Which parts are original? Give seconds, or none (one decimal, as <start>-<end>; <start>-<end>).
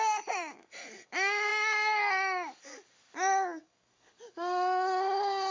none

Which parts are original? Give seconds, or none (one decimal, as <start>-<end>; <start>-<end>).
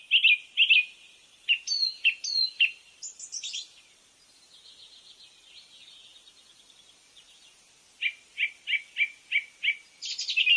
0.0-10.6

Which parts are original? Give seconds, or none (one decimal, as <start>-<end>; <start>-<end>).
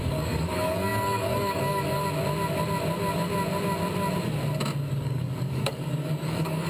2.0-4.9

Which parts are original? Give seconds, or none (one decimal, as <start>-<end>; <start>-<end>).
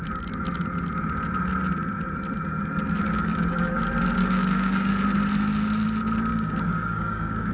0.0-3.0; 3.8-4.2; 4.9-6.3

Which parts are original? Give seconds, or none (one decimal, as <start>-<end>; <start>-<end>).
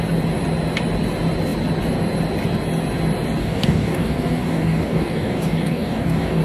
0.0-3.4